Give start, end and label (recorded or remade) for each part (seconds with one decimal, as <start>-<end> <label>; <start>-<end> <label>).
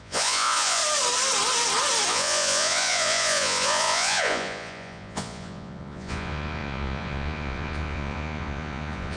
0.0-0.8 remade; 0.8-2.1 recorded; 2.1-9.2 remade